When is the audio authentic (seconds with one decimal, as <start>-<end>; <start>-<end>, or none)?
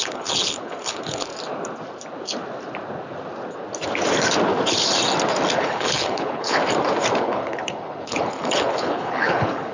1.3-5.6; 6.6-7.2